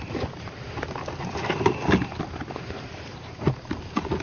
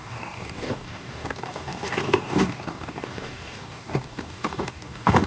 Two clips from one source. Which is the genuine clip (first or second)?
first